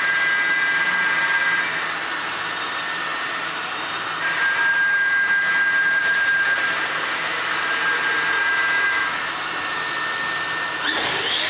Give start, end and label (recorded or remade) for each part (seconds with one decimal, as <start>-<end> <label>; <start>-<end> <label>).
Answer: 0.0-3.1 recorded; 3.1-3.7 remade; 3.7-6.0 recorded; 6.0-9.0 remade; 9.0-11.5 recorded